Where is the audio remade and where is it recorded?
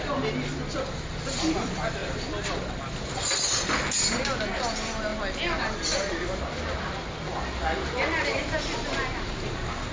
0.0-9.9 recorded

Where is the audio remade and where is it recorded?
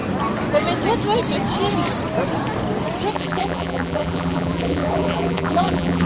0.0-3.1 recorded; 3.1-6.1 remade